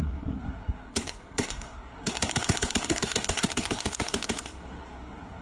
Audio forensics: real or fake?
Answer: fake